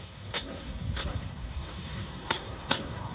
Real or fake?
fake